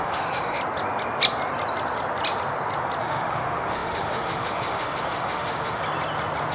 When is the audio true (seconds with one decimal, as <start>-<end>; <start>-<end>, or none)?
0.6-3.0; 5.8-6.5